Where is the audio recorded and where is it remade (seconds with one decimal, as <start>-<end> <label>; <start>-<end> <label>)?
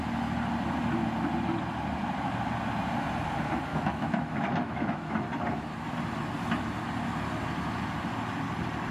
0.0-3.7 recorded; 3.7-5.1 remade; 5.1-8.9 recorded